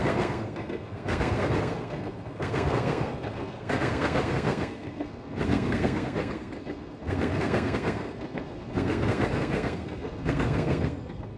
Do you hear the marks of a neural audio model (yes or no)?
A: yes